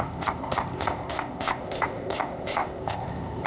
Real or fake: fake